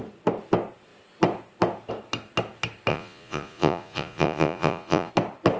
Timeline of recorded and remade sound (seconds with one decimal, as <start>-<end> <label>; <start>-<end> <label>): 0.0-2.9 recorded; 2.9-5.1 remade; 5.1-5.6 recorded

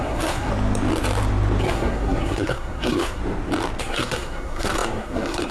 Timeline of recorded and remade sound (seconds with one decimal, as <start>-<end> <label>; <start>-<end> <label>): 0.0-0.5 remade; 0.5-1.6 recorded; 1.6-3.2 remade; 3.2-3.8 recorded; 3.8-5.5 remade